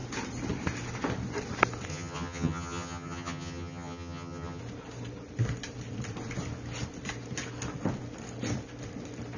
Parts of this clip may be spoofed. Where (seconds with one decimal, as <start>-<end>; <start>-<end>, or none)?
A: 1.9-4.6